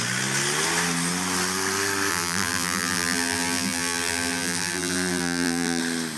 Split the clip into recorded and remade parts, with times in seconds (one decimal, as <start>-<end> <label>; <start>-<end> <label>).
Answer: 0.0-2.1 recorded; 2.1-5.8 remade; 5.8-6.2 recorded